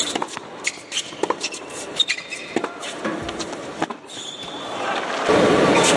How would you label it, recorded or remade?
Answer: remade